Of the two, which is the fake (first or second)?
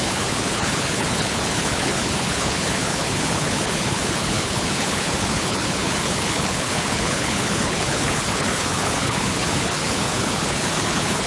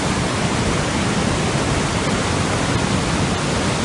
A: first